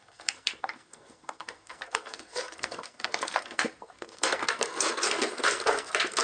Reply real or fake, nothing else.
fake